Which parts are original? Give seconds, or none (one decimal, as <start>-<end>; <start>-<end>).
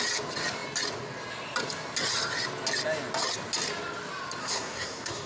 0.0-4.4